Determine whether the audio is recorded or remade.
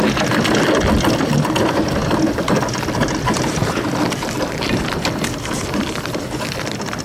recorded